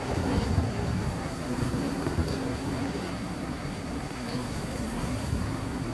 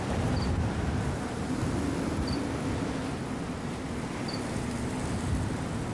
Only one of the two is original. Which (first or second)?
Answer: second